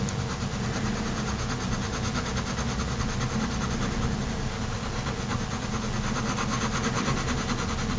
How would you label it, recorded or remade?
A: recorded